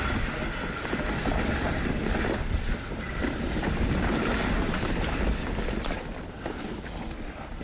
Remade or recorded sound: remade